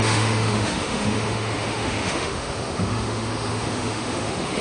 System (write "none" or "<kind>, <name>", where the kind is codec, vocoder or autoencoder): autoencoder, DAC-VAE